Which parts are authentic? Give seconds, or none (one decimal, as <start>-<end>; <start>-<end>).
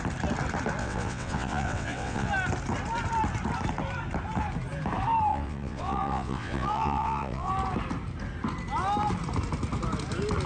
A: 0.0-0.8; 2.3-5.3; 7.5-10.5